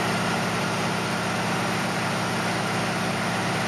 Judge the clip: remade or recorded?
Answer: remade